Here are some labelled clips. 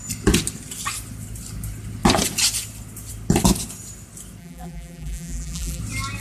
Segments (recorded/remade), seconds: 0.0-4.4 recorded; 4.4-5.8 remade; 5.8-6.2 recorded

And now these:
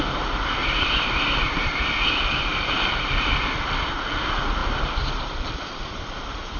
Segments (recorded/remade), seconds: 0.0-0.6 recorded; 0.6-1.8 remade; 1.8-2.5 recorded; 2.5-3.3 remade; 3.3-4.6 recorded; 4.6-6.6 remade